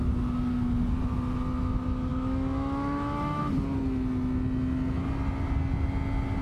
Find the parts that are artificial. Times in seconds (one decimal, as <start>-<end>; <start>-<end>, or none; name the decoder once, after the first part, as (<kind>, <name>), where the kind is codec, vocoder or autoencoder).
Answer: 2.1-3.4 (autoencoder, DAC-VAE)